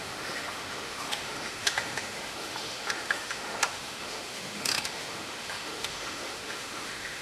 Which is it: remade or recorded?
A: remade